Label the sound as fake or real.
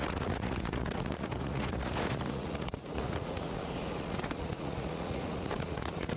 fake